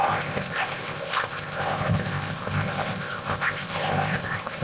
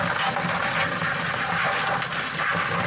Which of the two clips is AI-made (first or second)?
first